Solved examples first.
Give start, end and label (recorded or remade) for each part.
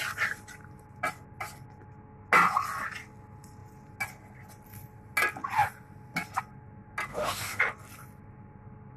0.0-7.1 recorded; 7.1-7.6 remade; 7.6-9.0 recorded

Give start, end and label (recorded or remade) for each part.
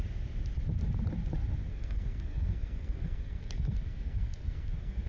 0.0-1.7 recorded; 1.7-5.1 remade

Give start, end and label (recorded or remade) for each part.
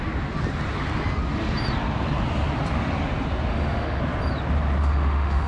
0.0-3.5 recorded; 3.5-4.0 remade; 4.0-4.8 recorded; 4.8-5.5 remade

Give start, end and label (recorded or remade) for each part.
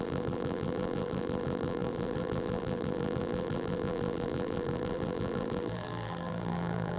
0.0-7.0 remade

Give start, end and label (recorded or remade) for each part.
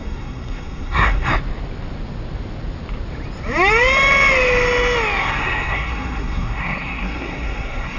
0.0-1.3 remade; 1.3-5.2 recorded; 5.2-8.0 remade